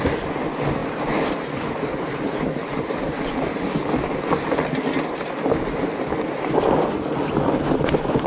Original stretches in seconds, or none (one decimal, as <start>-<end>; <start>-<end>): 3.8-7.8